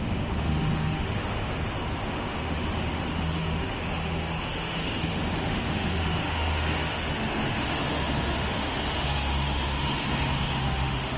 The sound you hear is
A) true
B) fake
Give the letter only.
B